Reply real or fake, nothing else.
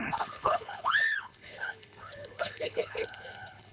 fake